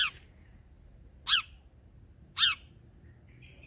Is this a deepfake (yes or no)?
no